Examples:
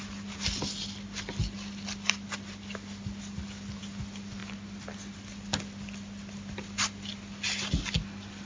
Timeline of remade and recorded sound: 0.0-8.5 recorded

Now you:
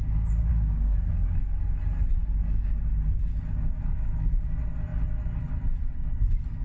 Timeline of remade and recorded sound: 0.0-0.5 recorded; 0.5-1.1 remade; 1.1-6.6 recorded

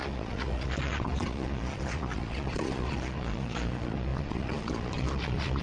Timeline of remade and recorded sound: 0.0-5.6 remade

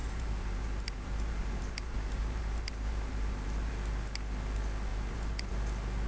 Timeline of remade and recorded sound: 0.0-3.7 remade; 3.7-4.9 recorded; 4.9-5.5 remade; 5.5-6.1 recorded

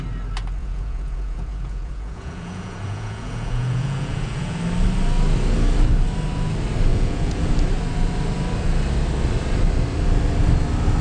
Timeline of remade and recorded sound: 0.0-0.6 recorded; 0.6-4.6 remade; 4.6-6.9 recorded; 6.9-7.5 remade; 7.5-11.0 recorded

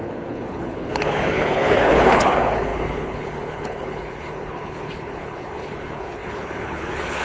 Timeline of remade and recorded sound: 0.0-7.2 remade